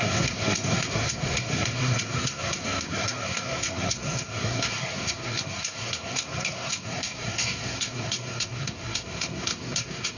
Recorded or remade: remade